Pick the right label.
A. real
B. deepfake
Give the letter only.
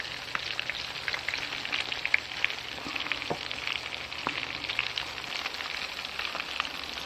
A